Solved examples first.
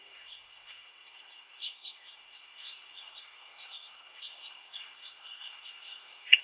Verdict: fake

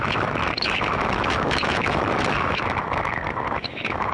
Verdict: fake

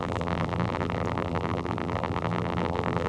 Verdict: fake